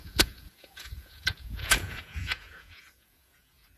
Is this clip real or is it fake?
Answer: fake